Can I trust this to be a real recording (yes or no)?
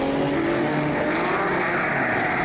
yes